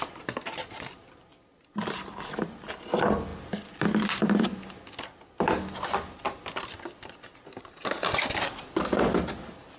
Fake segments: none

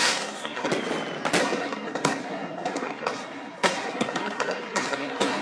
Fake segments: 0.0-0.7 (codec, SNAC); 1.4-5.4

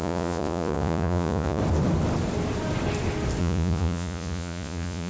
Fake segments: 0.0-1.6 (vocoder, Vocos); 3.4-5.1

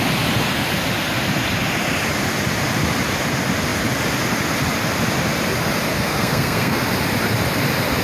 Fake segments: 5.9-6.9 (codec, SNAC)

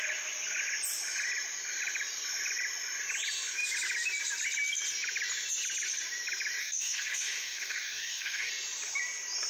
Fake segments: 6.6-8.5 (codec, DAC)

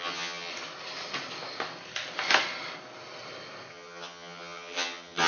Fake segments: 0.0-0.5 (vocoder, HiFi-GAN); 3.7-5.3

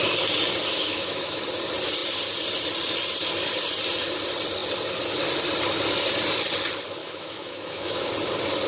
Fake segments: 0.7-1.4 (autoencoder, DAC-VAE); 7.0-8.1